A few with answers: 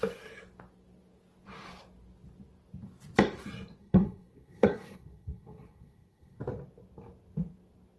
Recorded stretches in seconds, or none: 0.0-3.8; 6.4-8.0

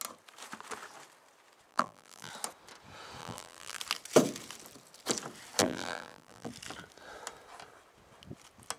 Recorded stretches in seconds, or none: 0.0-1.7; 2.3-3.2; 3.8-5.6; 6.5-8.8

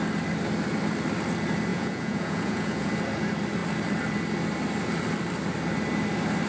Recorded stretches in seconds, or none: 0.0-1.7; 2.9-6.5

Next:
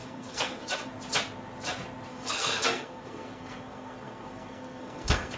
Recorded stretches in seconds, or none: 0.9-2.1

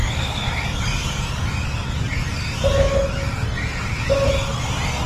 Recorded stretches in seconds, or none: 0.0-5.1

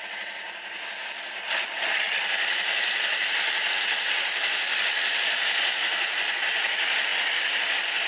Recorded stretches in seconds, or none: 0.0-8.1